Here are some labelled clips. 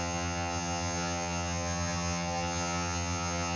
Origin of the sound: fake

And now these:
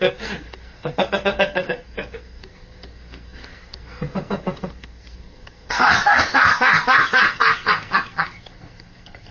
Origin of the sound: fake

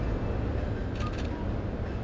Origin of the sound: real